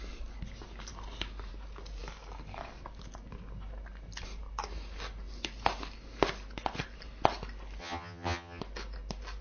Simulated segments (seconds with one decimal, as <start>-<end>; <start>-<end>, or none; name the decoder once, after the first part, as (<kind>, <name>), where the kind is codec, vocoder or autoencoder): 7.8-8.6 (vocoder, HiFi-GAN)